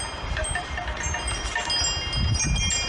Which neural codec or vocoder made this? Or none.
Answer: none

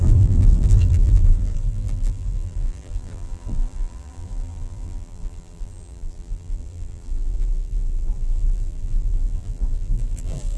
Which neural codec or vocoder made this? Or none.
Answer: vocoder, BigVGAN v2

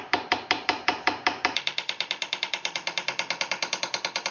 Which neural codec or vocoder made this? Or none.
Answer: vocoder, BigVGAN v2